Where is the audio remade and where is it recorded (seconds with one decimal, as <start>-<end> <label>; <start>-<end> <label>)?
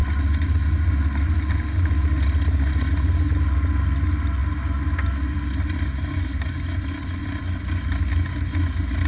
0.0-9.1 recorded